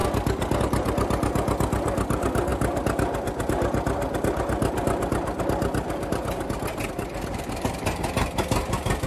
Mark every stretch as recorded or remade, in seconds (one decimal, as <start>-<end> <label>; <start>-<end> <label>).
0.0-9.1 recorded